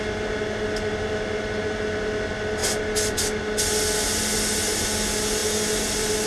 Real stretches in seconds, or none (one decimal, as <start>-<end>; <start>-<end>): 0.0-6.3